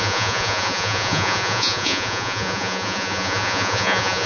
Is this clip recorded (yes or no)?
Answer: no